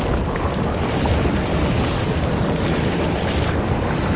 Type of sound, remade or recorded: recorded